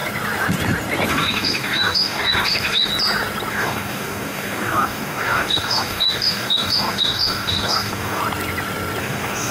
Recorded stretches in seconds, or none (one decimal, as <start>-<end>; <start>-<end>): 0.0-1.1; 2.9-3.5; 8.2-9.0